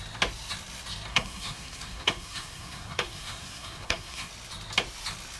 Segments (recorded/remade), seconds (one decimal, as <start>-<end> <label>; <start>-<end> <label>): 0.0-1.1 recorded; 1.1-4.3 remade; 4.3-5.4 recorded